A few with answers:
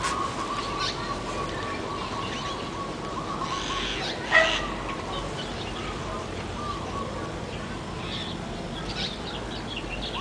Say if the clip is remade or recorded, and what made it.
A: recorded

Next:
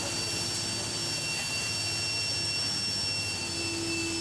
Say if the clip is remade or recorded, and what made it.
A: recorded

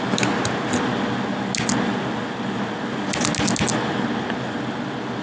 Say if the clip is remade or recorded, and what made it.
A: recorded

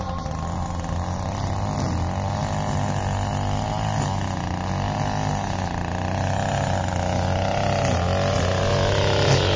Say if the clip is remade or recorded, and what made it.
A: recorded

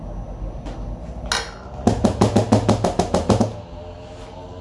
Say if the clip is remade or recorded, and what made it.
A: recorded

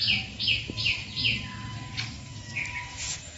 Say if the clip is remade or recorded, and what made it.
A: recorded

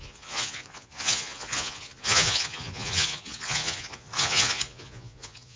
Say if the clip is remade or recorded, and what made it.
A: remade, vocoder, Vocos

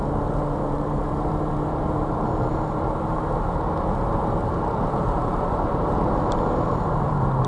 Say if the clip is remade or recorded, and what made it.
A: remade, vocoder, BigVGAN v2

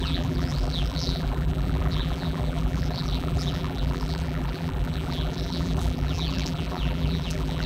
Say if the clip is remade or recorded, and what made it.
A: remade, vocoder, BigVGAN v2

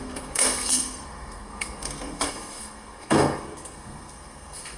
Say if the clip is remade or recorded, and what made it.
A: remade, codec, SNAC